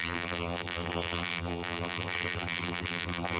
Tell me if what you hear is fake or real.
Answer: fake